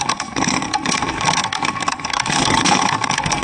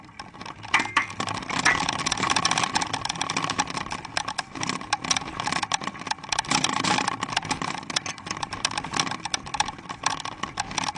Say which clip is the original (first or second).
second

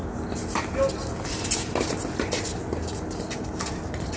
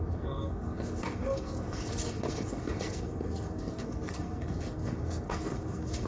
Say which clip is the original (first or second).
first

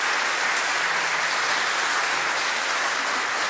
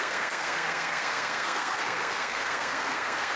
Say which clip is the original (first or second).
first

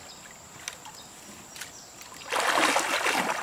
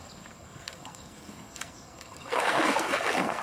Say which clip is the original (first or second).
first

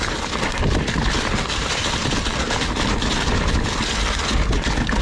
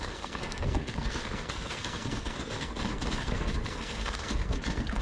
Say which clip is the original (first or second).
first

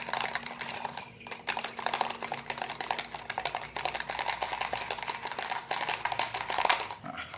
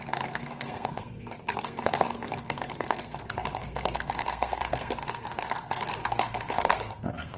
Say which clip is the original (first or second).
first